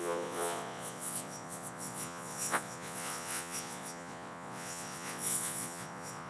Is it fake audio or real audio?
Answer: fake